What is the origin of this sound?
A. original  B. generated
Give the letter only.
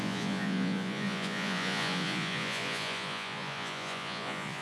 B